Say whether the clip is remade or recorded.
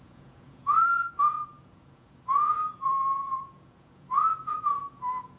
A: remade